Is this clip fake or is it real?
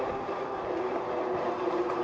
real